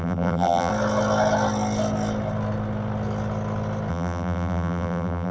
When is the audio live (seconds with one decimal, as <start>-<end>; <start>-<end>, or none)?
0.7-3.9